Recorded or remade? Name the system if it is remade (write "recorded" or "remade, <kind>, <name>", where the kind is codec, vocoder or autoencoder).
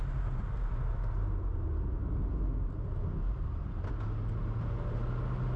recorded